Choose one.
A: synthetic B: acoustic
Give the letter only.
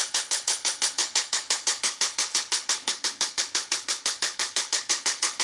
A